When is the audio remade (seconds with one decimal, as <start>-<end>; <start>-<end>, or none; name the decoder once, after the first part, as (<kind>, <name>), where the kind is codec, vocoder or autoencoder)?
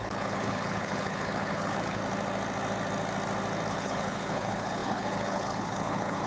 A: 0.0-2.0 (codec, HILCodec); 3.7-6.3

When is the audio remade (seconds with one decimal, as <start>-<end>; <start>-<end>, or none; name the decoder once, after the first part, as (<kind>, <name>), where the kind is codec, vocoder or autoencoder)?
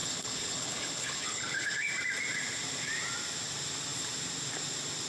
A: 0.0-1.9 (codec, HILCodec)